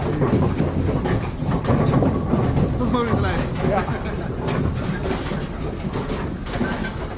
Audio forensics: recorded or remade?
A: recorded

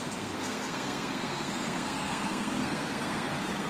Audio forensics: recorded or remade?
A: remade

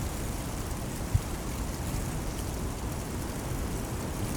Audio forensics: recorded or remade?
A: recorded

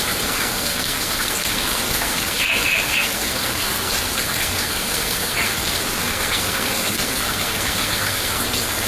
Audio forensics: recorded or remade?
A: remade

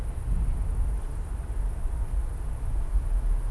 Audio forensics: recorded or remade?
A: recorded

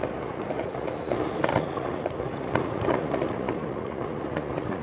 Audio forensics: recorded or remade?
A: remade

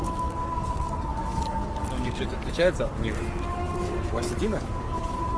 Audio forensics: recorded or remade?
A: remade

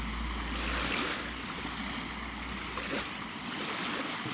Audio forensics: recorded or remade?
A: recorded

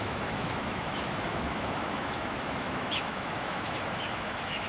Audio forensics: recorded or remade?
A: remade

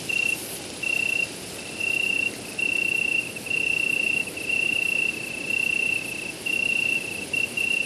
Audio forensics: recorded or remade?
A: recorded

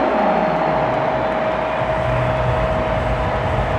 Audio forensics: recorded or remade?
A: recorded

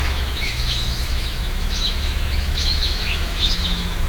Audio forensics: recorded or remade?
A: remade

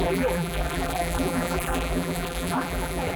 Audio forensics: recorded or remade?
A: remade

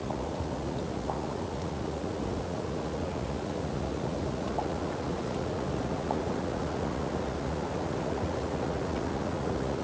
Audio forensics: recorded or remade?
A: remade